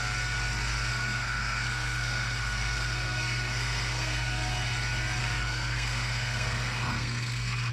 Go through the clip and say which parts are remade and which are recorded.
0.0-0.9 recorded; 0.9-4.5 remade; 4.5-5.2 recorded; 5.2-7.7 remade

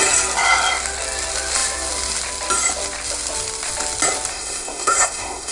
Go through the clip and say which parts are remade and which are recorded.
0.0-4.3 recorded; 4.3-5.5 remade

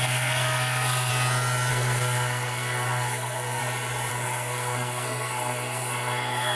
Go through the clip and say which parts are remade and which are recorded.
0.0-1.1 remade; 1.1-1.7 recorded; 1.7-3.6 remade; 3.6-4.1 recorded; 4.1-6.6 remade

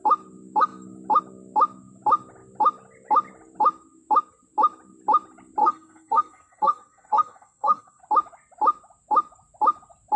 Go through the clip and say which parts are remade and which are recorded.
0.0-5.6 recorded; 5.6-8.0 remade; 8.0-10.2 recorded

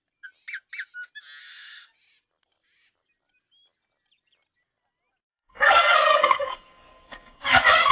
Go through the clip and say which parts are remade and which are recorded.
0.0-1.4 recorded; 1.4-1.9 remade; 1.9-5.3 recorded; 5.3-7.9 remade

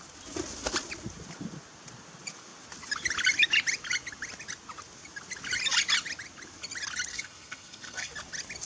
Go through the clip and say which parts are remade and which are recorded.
0.0-7.1 recorded; 7.1-8.1 remade; 8.1-8.7 recorded

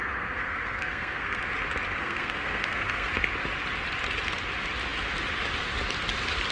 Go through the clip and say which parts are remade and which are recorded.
0.0-1.4 remade; 1.4-2.0 recorded; 2.0-3.1 remade; 3.1-6.5 recorded

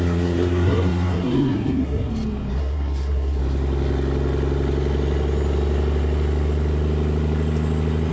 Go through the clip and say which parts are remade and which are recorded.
0.0-2.1 remade; 2.1-2.6 recorded; 2.6-3.4 remade; 3.4-8.1 recorded